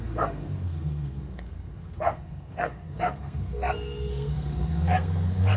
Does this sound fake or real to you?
fake